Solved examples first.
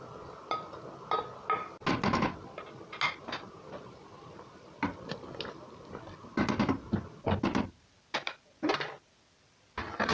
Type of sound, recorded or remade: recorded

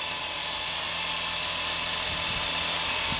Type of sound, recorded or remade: recorded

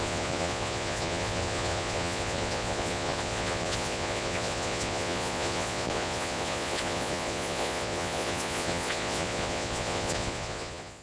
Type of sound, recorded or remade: remade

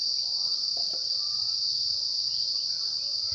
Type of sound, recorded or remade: recorded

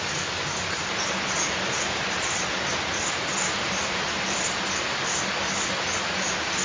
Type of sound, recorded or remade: recorded